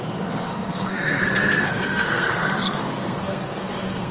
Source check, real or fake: fake